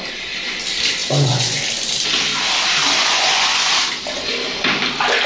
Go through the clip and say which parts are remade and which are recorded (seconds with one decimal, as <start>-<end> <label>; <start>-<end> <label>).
0.0-1.0 recorded; 1.0-1.6 remade; 1.6-3.0 recorded; 3.0-3.7 remade; 3.7-5.3 recorded